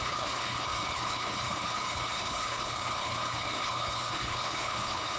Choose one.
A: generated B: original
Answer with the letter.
A